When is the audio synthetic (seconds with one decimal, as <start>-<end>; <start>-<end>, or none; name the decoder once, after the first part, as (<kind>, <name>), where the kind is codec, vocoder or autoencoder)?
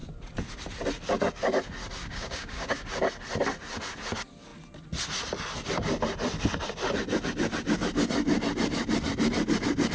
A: 2.0-2.9 (codec, DAC)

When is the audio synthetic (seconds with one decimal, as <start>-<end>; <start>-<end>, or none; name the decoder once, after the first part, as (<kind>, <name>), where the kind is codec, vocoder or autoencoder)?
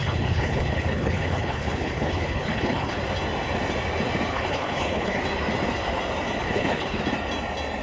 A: 0.0-3.0 (codec, HILCodec); 4.3-5.2; 6.4-7.0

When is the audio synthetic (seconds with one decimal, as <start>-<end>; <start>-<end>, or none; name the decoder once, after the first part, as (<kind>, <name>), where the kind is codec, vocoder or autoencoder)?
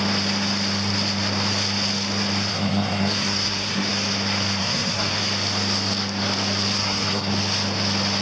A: 2.5-3.9 (codec, SNAC); 4.6-5.2; 6.8-7.3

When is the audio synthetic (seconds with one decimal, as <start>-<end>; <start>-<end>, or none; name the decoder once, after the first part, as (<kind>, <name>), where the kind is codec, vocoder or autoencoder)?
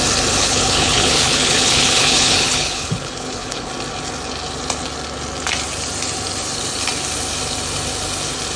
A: 0.4-3.7 (codec, HILCodec)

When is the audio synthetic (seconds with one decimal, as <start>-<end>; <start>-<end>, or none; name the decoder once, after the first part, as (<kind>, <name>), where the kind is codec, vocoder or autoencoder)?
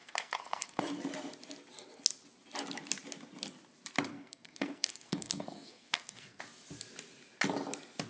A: 0.0-0.8 (codec, SNAC); 4.1-6.4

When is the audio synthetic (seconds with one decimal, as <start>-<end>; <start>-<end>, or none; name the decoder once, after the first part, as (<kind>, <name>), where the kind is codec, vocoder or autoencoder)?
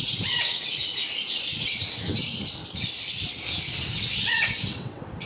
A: 0.0-0.8 (vocoder, WaveNeXt); 1.3-2.2; 3.9-5.3